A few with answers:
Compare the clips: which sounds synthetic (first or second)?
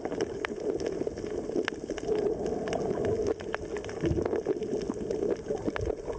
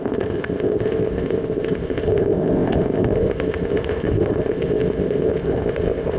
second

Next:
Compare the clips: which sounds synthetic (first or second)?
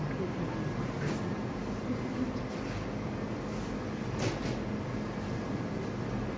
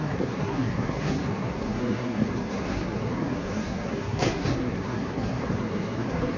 second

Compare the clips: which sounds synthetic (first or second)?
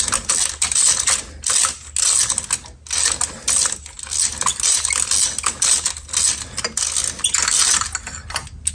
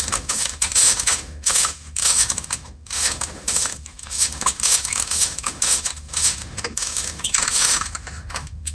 second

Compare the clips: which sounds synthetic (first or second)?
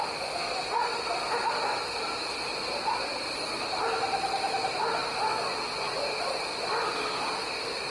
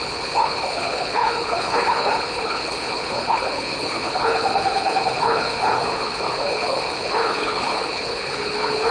second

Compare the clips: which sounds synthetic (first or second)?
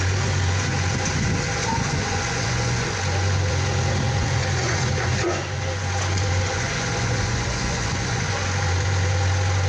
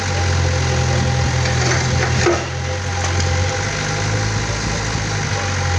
first